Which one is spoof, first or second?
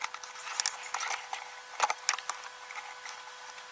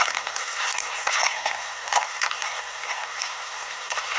second